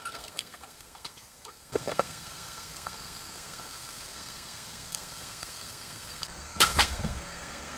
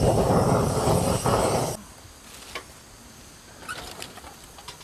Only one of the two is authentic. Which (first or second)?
second